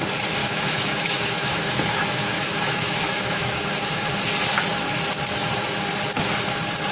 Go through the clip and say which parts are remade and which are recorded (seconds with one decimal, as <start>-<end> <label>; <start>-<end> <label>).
0.0-0.4 recorded; 0.4-4.1 remade; 4.1-6.9 recorded